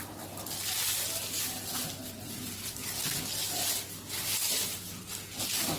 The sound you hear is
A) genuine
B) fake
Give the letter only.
A